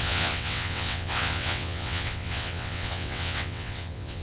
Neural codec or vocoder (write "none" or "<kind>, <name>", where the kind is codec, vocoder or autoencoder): vocoder, WaveNeXt